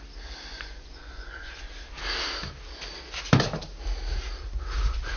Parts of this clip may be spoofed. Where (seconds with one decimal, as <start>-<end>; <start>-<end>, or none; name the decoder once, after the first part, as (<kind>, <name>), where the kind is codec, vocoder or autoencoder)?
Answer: 0.5-1.7 (vocoder, Vocos)